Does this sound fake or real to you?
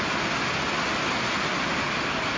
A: real